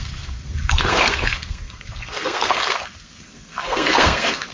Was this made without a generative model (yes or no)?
no